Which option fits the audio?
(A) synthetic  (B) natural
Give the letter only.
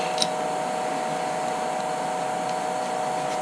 B